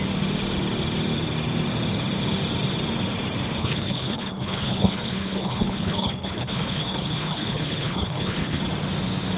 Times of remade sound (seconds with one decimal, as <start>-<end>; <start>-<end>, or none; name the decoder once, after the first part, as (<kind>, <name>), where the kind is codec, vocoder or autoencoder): 3.6-8.6 (codec, HILCodec)